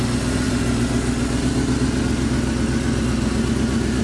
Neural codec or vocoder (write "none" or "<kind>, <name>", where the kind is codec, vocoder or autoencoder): none